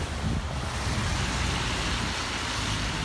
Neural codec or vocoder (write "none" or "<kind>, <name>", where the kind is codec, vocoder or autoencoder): none